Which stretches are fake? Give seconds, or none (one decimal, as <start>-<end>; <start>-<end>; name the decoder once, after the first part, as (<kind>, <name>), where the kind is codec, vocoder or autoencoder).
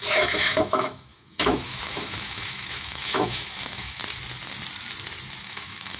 0.0-4.0 (autoencoder, DAC-VAE); 5.4-6.0